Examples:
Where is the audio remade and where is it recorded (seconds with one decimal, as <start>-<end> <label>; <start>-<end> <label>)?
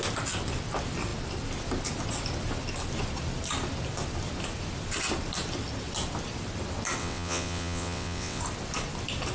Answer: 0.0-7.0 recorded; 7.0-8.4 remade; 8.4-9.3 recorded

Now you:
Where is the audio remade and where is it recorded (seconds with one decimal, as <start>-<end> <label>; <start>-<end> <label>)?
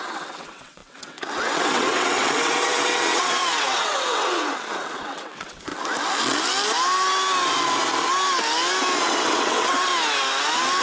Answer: 0.0-5.7 remade; 5.7-9.0 recorded; 9.0-9.9 remade; 9.9-10.8 recorded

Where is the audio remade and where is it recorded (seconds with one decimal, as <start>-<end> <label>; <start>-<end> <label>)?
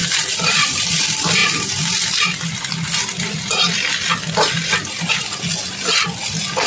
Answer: 0.0-6.7 recorded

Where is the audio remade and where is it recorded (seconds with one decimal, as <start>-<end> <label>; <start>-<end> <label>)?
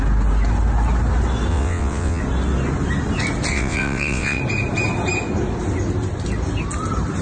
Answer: 0.0-1.5 recorded; 1.5-2.2 remade; 2.2-3.5 recorded; 3.5-4.4 remade; 4.4-7.2 recorded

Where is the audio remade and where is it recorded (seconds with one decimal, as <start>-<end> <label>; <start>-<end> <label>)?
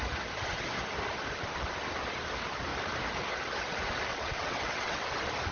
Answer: 0.0-4.1 recorded; 4.1-5.1 remade; 5.1-5.5 recorded